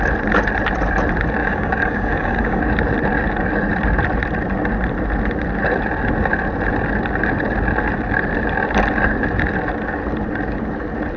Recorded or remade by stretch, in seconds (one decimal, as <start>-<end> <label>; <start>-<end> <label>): 0.0-1.4 recorded; 1.4-2.6 remade; 2.6-11.2 recorded